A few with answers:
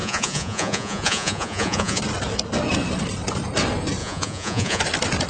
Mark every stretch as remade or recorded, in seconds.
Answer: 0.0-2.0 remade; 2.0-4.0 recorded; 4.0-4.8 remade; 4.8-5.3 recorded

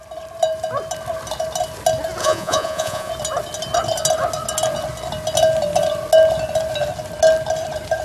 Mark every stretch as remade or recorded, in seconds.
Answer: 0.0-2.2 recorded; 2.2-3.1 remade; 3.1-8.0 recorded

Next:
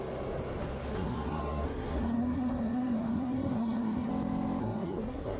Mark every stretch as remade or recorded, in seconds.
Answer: 0.0-0.9 recorded; 0.9-4.1 remade; 4.1-4.6 recorded; 4.6-5.4 remade